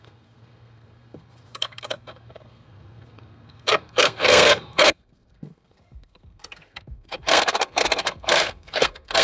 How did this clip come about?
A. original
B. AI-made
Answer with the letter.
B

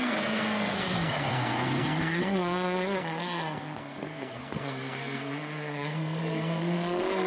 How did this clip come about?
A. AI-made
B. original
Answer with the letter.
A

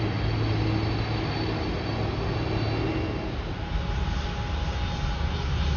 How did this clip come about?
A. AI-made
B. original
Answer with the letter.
B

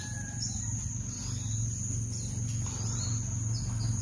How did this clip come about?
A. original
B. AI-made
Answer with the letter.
A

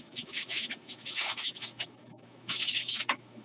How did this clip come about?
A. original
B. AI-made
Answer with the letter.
B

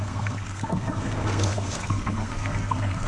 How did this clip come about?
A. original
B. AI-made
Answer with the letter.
B